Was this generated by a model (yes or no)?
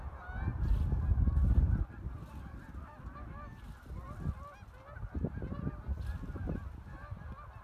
no